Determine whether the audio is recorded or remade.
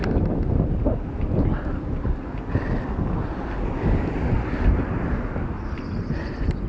recorded